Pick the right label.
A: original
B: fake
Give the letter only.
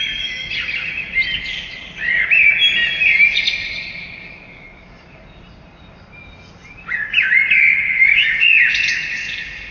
A